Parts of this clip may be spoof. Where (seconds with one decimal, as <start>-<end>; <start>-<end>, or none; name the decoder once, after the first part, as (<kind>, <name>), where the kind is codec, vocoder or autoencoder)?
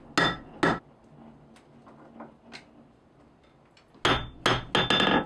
none